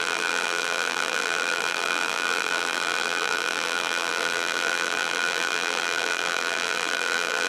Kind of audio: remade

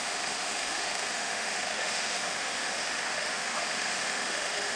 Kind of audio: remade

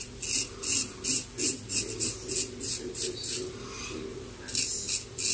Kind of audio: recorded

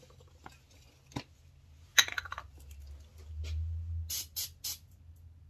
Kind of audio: recorded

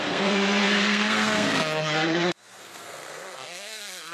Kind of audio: remade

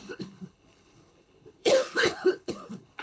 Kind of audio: remade